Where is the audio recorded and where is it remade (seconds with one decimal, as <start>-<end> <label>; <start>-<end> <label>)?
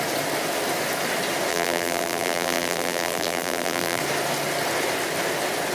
0.0-1.5 recorded; 1.5-4.0 remade; 4.0-5.7 recorded